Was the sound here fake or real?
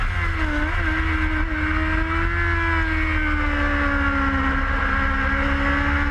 real